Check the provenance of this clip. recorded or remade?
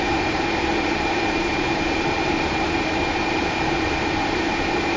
remade